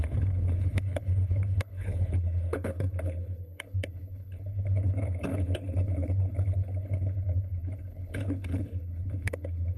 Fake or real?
fake